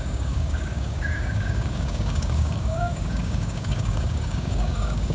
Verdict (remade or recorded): remade